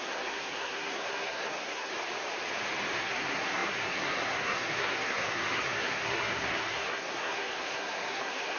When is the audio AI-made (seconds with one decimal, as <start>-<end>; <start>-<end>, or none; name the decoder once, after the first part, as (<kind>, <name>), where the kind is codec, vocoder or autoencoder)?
0.0-1.9 (codec, SNAC); 3.0-8.6